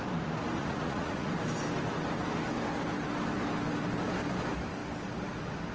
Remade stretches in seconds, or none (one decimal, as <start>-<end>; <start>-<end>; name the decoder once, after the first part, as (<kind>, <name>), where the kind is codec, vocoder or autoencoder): 0.6-1.3 (vocoder, Vocos)

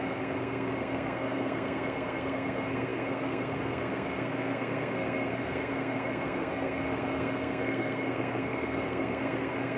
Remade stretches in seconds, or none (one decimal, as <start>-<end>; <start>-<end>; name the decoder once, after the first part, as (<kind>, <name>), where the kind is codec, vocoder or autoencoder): 0.0-9.8 (codec, SNAC)

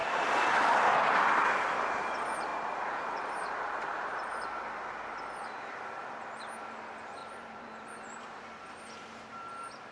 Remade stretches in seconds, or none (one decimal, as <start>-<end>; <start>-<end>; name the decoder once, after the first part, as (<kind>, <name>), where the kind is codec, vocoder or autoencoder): 2.5-4.4 (vocoder, BigVGAN v2); 7.2-8.4

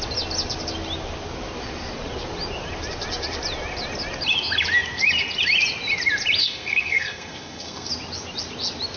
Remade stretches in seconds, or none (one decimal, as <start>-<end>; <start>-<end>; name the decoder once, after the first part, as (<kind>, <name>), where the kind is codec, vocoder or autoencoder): 6.4-7.9 (codec, SNAC)

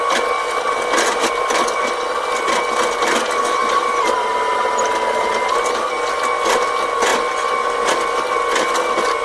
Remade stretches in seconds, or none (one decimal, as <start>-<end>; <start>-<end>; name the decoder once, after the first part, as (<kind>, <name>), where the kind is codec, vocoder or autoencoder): 3.6-4.5 (vocoder, BigVGAN v2)

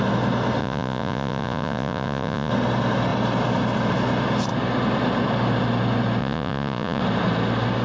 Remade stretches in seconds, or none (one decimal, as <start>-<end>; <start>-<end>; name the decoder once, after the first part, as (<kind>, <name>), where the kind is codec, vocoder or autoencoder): 0.6-2.5 (vocoder, Vocos); 6.2-7.0